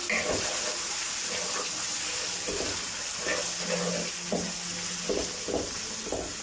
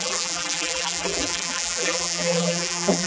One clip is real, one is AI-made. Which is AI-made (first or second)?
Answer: second